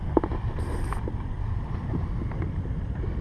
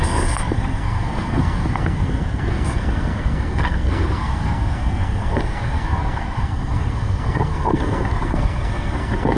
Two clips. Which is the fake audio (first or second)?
second